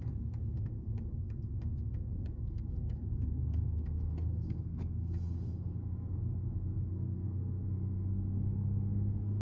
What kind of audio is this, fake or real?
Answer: fake